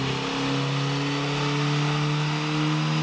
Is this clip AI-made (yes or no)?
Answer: no